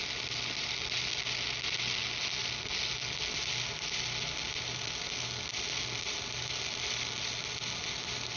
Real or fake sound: real